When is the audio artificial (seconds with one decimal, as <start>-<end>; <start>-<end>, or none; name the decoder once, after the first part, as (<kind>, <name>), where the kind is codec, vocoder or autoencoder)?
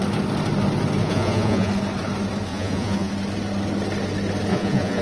1.0-1.7 (vocoder, Vocos); 2.5-3.1; 4.5-5.0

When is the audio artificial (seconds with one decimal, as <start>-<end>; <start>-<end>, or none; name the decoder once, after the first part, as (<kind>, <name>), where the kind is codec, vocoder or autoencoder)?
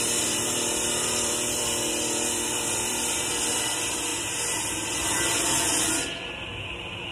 0.0-4.1 (vocoder, BigVGAN v2)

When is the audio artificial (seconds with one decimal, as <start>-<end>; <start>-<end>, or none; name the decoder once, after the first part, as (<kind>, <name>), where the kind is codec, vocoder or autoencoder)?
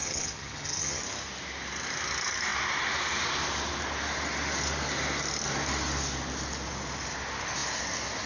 0.0-1.0 (vocoder, HiFi-GAN)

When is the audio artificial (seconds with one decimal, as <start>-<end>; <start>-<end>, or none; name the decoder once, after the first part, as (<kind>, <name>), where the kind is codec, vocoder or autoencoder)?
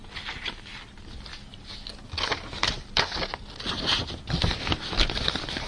none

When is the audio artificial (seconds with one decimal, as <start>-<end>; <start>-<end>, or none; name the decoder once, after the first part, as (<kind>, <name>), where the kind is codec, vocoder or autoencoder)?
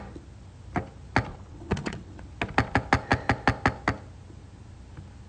1.3-2.2 (vocoder, WaveNeXt)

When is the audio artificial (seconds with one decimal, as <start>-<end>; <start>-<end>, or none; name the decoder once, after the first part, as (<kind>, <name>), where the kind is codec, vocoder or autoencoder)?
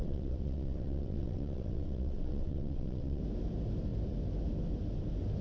0.0-3.2 (vocoder, WaveNeXt)